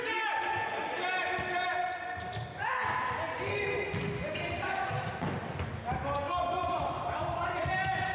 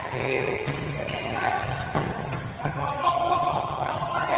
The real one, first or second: first